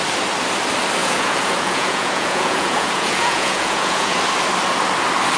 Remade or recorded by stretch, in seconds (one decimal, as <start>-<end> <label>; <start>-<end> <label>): 0.0-1.0 recorded; 1.0-4.2 remade; 4.2-5.4 recorded